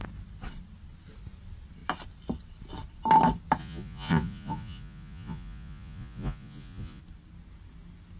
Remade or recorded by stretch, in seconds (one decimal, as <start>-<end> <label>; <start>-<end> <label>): 0.0-3.6 recorded; 3.6-7.0 remade; 7.0-8.2 recorded